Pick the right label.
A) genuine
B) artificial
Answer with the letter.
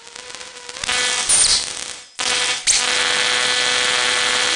A